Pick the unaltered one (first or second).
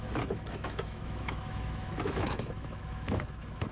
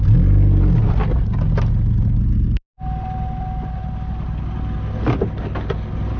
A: second